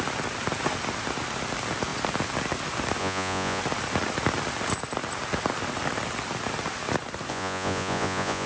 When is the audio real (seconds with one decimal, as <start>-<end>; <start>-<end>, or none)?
0.0-3.0; 3.6-7.3